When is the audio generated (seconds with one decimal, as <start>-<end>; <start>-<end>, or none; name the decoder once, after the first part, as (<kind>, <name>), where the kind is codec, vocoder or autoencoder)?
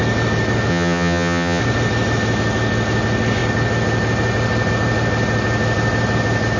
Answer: 0.7-1.6 (vocoder, HiFi-GAN)